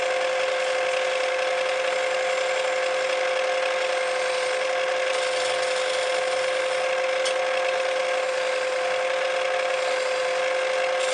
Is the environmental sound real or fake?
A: real